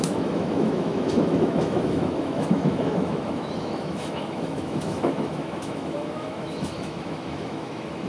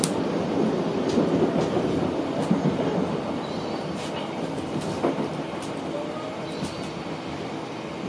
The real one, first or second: second